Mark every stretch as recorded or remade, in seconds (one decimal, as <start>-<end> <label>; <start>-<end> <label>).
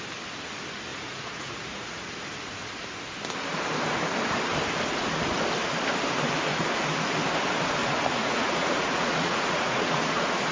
0.0-0.9 recorded; 0.9-2.1 remade; 2.1-7.8 recorded; 7.8-10.1 remade; 10.1-10.5 recorded